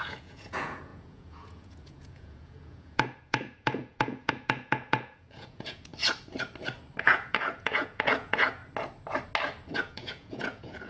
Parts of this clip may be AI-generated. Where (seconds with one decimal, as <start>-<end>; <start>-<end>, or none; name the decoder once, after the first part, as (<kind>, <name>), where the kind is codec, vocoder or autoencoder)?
0.0-5.9 (vocoder, Vocos); 7.0-8.6; 9.7-10.9